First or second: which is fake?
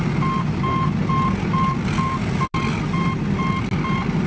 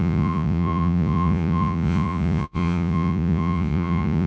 second